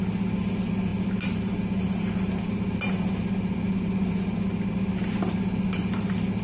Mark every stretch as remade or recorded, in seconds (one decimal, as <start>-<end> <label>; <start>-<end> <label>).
0.0-6.4 recorded